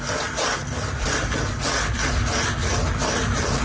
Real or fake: real